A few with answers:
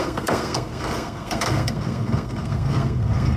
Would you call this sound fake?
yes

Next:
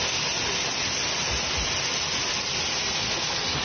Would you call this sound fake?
no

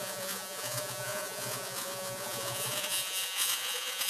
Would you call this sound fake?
yes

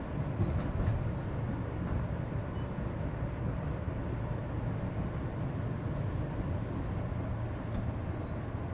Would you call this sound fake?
no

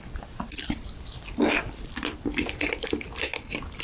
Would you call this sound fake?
no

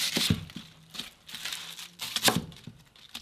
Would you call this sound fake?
no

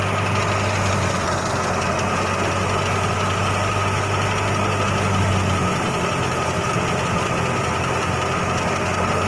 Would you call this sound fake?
no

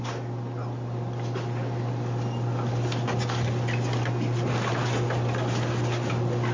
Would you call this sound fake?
no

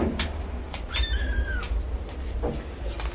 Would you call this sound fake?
no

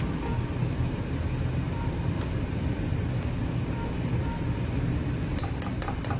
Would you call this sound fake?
no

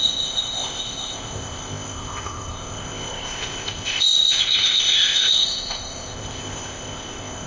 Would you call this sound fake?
yes